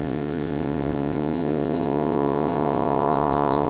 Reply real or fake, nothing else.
fake